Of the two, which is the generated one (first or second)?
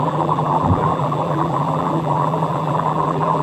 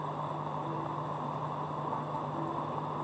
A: first